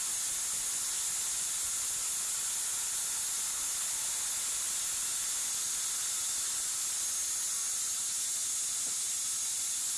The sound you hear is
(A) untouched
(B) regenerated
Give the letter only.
A